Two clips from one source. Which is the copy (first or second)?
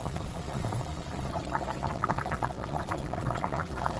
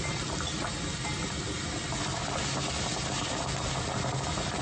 first